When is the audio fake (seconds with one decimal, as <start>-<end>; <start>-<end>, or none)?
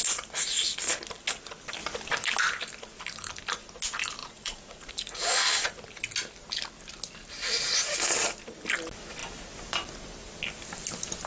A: 4.2-4.9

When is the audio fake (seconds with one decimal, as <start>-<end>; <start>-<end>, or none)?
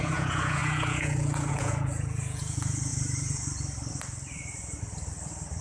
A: 0.0-2.9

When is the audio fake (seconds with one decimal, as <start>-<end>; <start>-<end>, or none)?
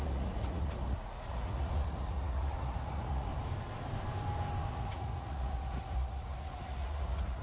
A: 0.0-3.3; 4.7-7.4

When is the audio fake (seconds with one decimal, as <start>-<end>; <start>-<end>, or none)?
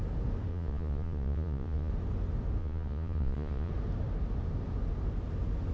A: 0.5-1.9; 2.6-3.7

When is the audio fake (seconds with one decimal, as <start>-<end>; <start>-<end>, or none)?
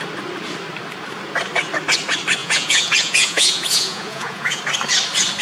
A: 2.4-4.6